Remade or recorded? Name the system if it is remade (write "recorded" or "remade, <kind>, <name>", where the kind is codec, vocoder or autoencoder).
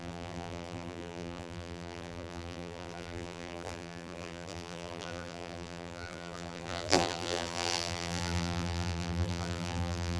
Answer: remade, vocoder, BigVGAN v2